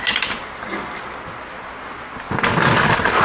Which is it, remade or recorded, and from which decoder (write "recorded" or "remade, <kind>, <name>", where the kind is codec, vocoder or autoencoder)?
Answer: recorded